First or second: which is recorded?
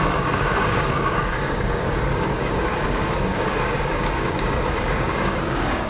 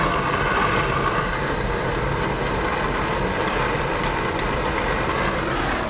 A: second